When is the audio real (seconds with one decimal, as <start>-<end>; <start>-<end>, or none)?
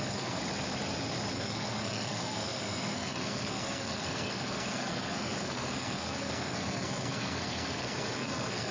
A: 0.4-1.3